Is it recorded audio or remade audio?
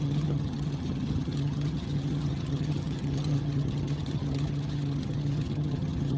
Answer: remade